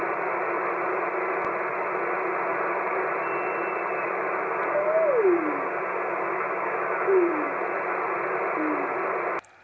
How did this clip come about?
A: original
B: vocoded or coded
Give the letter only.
A